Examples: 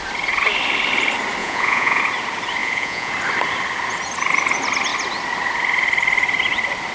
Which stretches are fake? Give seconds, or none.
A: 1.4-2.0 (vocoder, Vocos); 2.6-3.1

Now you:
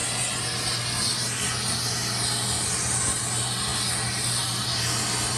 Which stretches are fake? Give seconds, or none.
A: none